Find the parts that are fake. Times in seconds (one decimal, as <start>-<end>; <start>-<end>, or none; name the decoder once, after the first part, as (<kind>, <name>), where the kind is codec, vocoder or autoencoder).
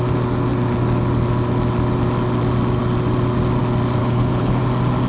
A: 4.0-4.6 (codec, HILCodec)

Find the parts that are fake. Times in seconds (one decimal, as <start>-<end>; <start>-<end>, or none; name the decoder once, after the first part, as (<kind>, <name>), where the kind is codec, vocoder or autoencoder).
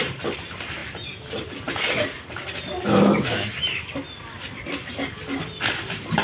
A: none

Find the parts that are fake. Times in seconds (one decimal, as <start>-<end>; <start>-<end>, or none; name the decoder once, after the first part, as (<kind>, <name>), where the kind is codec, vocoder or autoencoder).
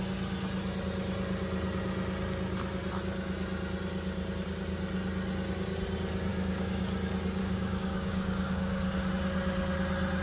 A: 6.3-6.8 (codec, DAC); 7.4-9.1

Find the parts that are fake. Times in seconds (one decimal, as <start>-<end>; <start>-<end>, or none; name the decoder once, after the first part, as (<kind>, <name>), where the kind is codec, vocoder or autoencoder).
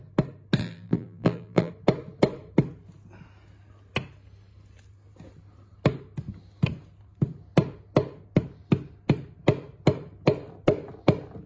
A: 0.6-1.7 (vocoder, BigVGAN v2)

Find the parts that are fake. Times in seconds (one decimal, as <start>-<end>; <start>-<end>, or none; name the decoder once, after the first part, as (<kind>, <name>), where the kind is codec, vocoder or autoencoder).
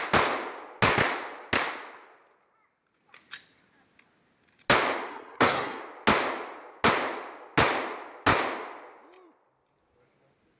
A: 5.1-5.8 (codec, SNAC)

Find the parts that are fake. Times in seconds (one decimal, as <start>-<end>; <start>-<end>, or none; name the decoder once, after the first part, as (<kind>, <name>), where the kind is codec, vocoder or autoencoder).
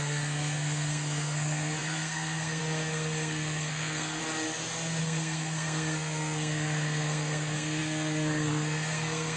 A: 0.0-4.2 (codec, SNAC); 5.0-9.4